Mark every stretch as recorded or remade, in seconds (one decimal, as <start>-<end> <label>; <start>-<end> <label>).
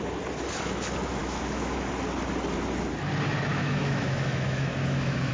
0.0-1.2 recorded; 1.2-1.9 remade; 1.9-3.5 recorded; 3.5-5.3 remade